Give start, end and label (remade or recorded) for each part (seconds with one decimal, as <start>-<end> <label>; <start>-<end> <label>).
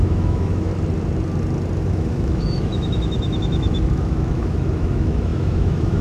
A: 0.0-0.7 remade; 0.7-1.8 recorded; 1.8-6.0 remade